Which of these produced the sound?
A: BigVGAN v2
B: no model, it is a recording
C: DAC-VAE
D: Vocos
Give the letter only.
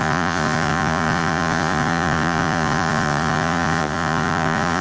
D